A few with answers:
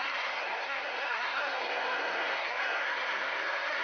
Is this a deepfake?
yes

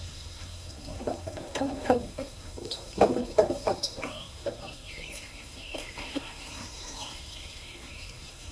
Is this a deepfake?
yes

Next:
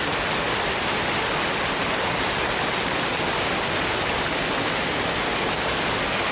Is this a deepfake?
no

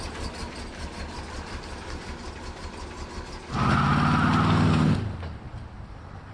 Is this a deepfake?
no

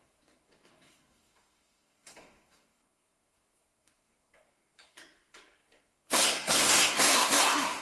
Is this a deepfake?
yes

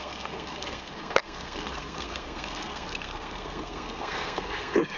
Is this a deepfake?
yes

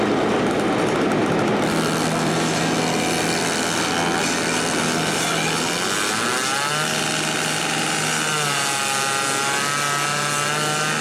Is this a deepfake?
no